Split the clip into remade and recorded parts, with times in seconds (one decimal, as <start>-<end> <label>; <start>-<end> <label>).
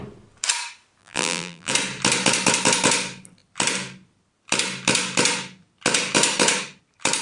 0.0-1.0 recorded; 1.0-1.7 remade; 1.7-7.2 recorded